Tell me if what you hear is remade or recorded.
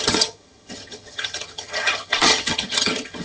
remade